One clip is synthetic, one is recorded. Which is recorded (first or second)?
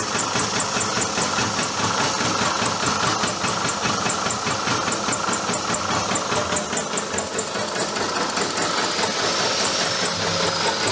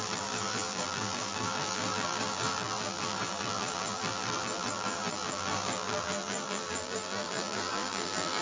first